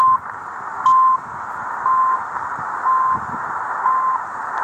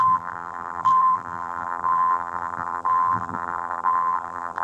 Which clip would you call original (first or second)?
first